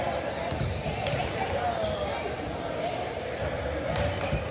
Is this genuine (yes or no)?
yes